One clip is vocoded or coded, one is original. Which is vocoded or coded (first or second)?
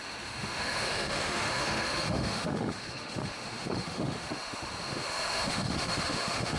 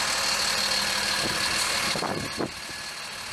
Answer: first